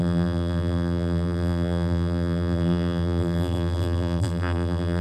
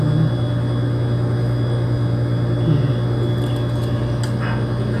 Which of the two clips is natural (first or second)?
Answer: second